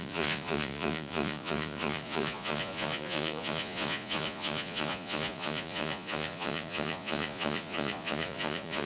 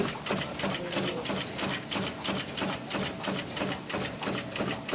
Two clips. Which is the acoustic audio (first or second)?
second